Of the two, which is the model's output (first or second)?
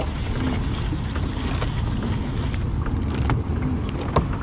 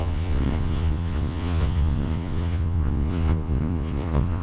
second